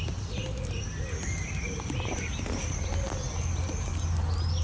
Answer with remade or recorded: recorded